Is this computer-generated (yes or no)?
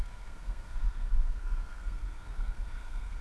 yes